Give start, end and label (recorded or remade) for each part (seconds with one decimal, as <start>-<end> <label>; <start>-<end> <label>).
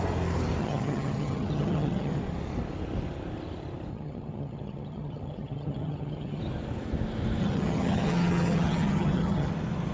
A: 0.0-0.6 recorded; 0.6-2.1 remade; 2.1-3.9 recorded; 3.9-6.4 remade; 6.4-7.4 recorded; 7.4-9.5 remade; 9.5-9.9 recorded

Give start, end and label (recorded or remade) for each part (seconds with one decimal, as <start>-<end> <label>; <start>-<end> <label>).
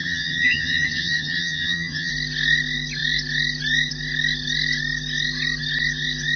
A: 0.0-2.1 remade; 2.1-6.4 recorded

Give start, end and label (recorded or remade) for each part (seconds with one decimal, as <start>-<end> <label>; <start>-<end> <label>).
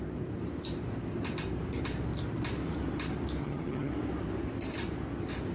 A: 0.0-3.4 recorded; 3.4-3.9 remade; 3.9-5.5 recorded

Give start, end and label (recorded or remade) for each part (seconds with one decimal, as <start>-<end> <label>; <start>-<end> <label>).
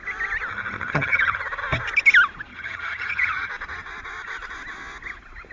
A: 0.0-0.5 recorded; 0.5-1.4 remade; 1.4-2.5 recorded; 2.5-3.5 remade; 3.5-5.5 recorded